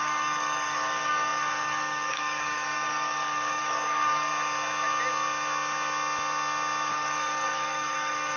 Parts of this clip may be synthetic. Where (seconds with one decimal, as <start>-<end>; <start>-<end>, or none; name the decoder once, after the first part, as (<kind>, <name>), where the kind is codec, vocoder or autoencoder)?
0.0-4.3 (codec, DAC); 6.9-8.4